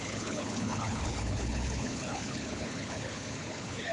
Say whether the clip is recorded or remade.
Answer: remade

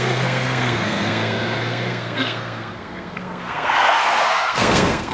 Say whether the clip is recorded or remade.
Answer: remade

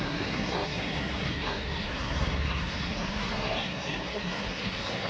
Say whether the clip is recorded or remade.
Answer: remade